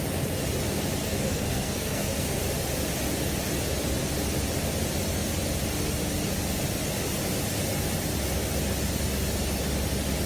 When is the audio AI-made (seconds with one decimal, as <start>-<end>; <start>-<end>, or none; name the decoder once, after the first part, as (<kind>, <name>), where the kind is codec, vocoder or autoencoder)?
1.0-2.4 (codec, SNAC)